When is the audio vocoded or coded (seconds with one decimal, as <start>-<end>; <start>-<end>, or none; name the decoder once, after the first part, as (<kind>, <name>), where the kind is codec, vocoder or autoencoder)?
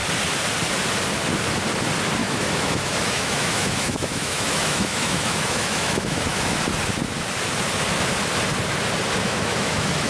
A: 2.2-6.6 (autoencoder, DAC-VAE); 9.2-10.1